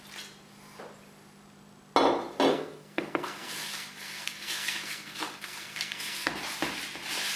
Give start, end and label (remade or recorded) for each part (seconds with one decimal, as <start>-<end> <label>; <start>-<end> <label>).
0.0-2.5 recorded; 2.5-6.3 remade; 6.3-7.4 recorded